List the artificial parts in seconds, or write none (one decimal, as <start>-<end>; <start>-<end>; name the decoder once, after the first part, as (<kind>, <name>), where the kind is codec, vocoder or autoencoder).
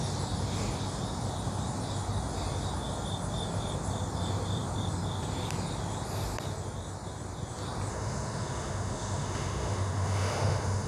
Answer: 7.9-10.9 (autoencoder, DAC-VAE)